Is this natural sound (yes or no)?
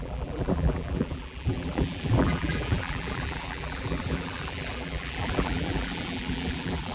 no